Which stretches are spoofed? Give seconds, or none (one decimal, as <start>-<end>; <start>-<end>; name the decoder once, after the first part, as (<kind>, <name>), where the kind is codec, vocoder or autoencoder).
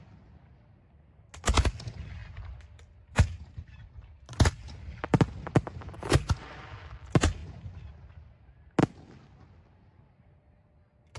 none